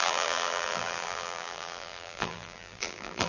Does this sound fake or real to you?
fake